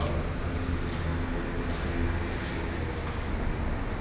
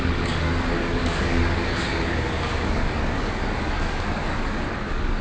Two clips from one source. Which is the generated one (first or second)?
second